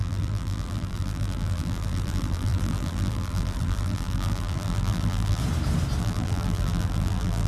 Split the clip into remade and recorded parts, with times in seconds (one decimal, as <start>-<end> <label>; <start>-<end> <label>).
0.0-5.4 remade; 5.4-6.0 recorded; 6.0-7.5 remade